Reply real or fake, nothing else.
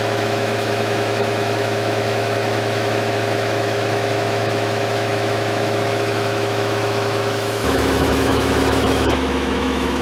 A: fake